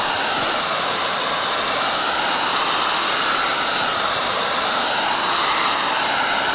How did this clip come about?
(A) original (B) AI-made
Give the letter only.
A